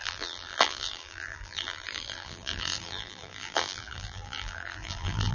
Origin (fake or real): fake